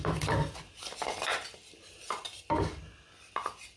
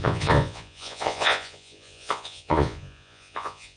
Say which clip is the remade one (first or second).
second